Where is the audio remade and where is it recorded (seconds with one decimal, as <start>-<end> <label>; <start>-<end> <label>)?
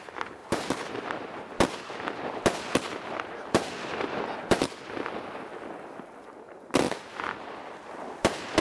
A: 0.0-0.4 recorded; 0.4-0.9 remade; 0.9-8.6 recorded